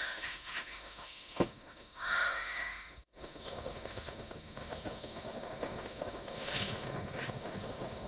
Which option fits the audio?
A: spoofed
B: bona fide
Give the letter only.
A